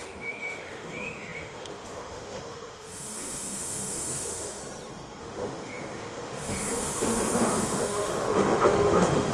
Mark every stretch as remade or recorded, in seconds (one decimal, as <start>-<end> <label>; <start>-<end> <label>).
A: 0.0-4.6 remade; 4.6-5.2 recorded; 5.2-9.3 remade